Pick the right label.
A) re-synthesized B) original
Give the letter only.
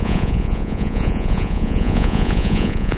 A